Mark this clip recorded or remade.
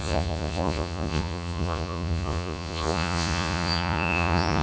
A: remade